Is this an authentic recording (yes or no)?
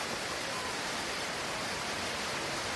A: yes